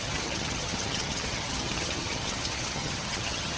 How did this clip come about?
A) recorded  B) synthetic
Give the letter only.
B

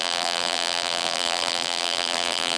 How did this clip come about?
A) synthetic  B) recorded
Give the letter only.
A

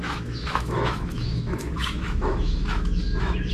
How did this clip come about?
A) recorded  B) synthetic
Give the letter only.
B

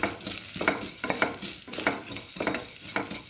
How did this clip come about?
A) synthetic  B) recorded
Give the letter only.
B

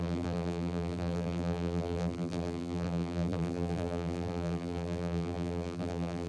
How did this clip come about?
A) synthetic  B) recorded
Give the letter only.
A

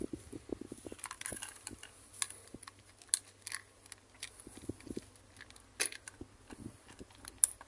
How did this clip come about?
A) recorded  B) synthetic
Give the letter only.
A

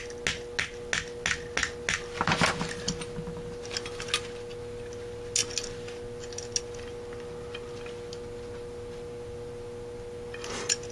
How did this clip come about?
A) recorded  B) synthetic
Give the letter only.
A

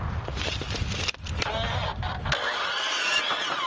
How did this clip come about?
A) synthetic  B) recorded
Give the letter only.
B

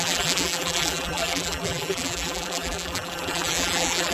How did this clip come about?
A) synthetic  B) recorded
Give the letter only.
A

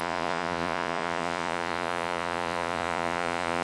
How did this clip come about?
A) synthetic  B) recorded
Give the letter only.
A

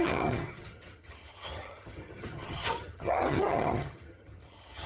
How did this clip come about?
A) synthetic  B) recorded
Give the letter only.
A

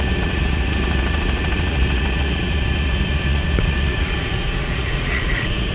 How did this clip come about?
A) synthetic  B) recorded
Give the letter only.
A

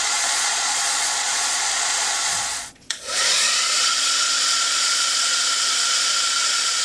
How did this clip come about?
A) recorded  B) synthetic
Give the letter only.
B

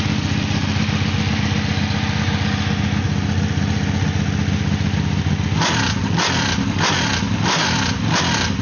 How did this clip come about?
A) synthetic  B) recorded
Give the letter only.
B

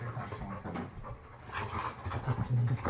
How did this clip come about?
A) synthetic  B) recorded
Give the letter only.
B